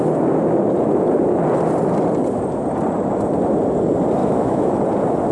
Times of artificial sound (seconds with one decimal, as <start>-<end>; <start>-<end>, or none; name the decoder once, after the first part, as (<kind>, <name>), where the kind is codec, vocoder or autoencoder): 4.2-4.7 (autoencoder, DAC-VAE)